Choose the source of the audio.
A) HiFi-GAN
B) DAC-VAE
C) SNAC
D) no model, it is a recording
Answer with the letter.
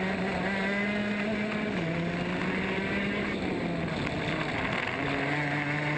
D